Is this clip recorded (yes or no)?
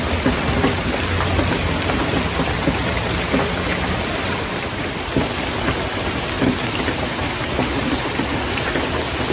yes